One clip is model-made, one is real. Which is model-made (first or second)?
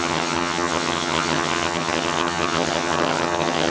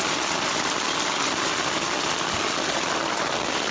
first